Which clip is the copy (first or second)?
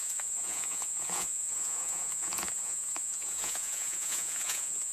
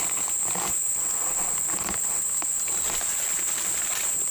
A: first